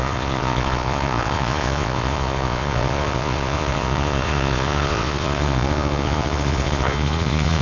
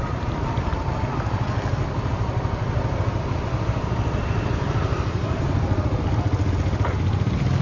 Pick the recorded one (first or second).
second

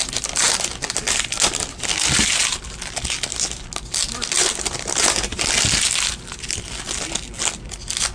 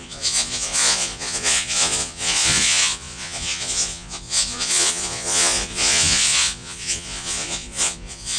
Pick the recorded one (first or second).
first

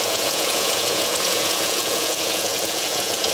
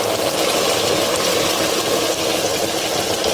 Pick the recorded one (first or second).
second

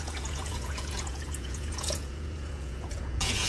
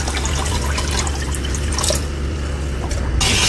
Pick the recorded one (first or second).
second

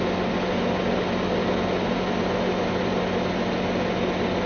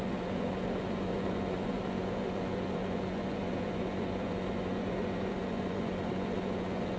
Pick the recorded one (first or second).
first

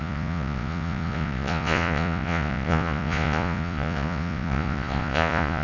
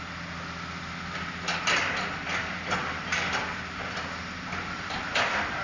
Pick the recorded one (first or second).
second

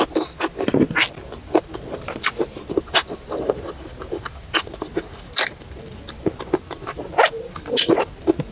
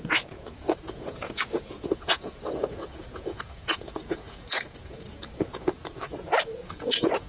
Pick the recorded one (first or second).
first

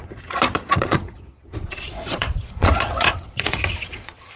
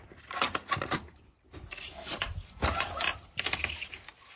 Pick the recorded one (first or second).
second